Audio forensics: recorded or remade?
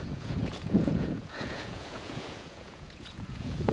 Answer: remade